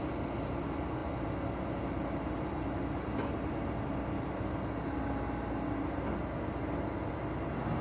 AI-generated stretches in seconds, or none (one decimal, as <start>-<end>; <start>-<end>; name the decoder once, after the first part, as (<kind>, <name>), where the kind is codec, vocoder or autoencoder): none